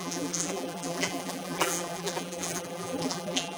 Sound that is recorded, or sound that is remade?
remade